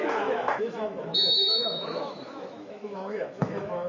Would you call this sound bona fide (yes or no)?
no